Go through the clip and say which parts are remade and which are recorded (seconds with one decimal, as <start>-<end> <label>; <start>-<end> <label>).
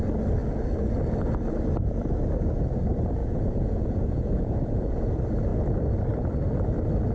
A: 0.0-3.2 recorded; 3.2-4.6 remade; 4.6-7.1 recorded